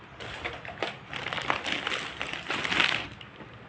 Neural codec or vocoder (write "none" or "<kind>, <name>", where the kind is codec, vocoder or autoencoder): none